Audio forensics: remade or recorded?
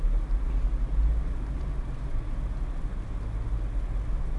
recorded